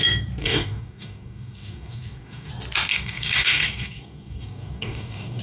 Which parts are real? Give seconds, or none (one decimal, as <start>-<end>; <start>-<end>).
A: 0.0-0.4; 2.5-2.9